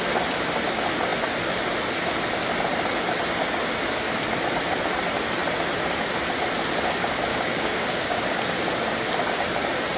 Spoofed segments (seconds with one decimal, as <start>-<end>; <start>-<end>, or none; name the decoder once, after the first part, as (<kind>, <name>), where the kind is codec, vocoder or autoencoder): 7.3-8.4 (codec, DAC)